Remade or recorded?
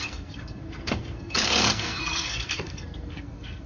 remade